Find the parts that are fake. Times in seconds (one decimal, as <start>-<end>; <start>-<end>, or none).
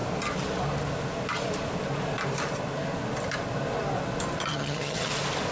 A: 4.5-5.1